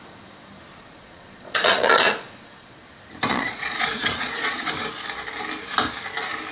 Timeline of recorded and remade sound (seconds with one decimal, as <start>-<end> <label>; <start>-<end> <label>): 0.0-0.7 recorded; 0.7-2.8 remade; 2.8-3.3 recorded; 3.3-4.7 remade; 4.7-6.5 recorded